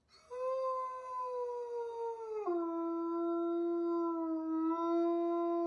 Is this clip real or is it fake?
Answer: real